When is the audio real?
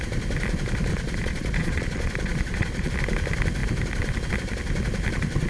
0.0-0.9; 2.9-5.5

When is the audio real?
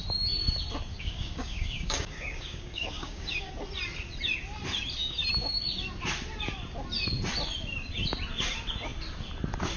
0.0-0.9; 3.5-9.8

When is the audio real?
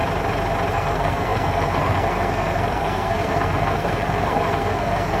0.0-0.7